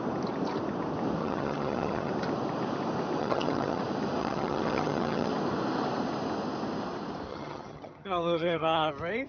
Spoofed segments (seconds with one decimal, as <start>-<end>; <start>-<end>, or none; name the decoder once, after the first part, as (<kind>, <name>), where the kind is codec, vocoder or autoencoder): 1.2-2.1 (vocoder, HiFi-GAN); 3.2-3.8; 4.2-5.3; 7.3-8.9